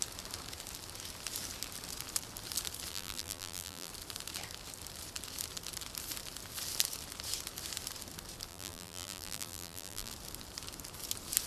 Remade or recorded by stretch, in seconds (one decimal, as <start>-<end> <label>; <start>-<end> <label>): 0.0-2.9 recorded; 2.9-3.9 remade; 3.9-8.5 recorded; 8.5-10.1 remade; 10.1-11.5 recorded

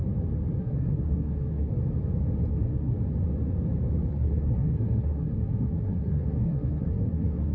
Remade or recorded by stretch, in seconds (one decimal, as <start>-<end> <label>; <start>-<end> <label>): 0.0-0.6 recorded; 0.6-1.7 remade; 1.7-2.5 recorded; 2.5-2.9 remade; 2.9-4.1 recorded; 4.1-7.5 remade

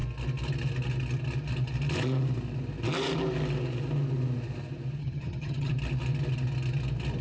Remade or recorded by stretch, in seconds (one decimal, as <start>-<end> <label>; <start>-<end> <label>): 0.0-5.0 recorded; 5.0-5.7 remade; 5.7-7.2 recorded